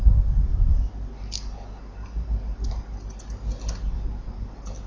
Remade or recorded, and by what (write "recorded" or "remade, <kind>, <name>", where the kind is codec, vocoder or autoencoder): recorded